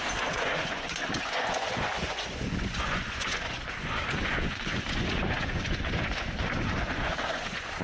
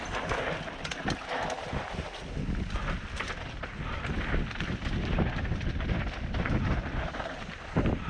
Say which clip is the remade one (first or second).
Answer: first